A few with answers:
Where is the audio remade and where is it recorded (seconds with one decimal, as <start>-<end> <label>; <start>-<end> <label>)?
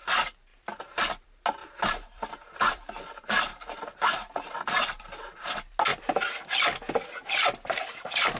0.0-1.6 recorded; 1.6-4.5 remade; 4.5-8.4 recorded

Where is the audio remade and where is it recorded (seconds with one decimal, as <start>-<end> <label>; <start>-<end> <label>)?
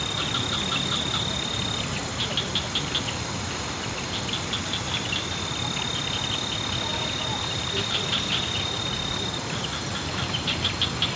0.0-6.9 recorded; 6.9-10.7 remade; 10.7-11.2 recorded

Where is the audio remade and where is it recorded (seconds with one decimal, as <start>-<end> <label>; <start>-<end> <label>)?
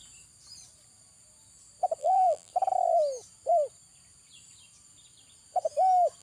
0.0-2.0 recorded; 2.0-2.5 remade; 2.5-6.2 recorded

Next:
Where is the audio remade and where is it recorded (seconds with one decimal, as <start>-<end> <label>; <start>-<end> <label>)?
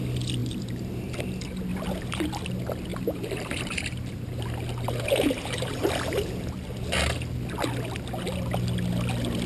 0.0-0.4 recorded; 0.4-1.2 remade; 1.2-2.9 recorded; 2.9-5.8 remade; 5.8-9.5 recorded